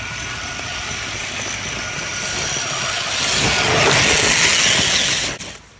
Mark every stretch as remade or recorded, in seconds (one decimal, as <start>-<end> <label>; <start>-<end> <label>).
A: 0.0-2.1 remade; 2.1-5.8 recorded